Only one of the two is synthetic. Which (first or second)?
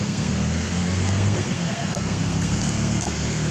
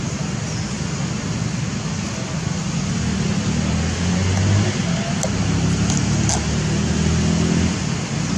first